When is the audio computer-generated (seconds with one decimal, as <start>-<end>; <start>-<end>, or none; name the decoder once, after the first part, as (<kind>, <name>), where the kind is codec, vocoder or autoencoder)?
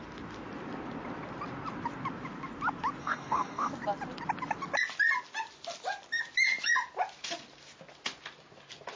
3.0-3.7 (codec, DAC)